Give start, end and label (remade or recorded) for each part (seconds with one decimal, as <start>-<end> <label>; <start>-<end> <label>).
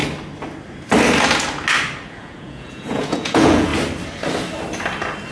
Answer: 0.0-2.1 recorded; 2.1-3.7 remade; 3.7-5.3 recorded